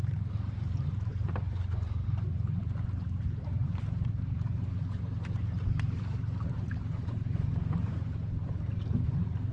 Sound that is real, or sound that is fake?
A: fake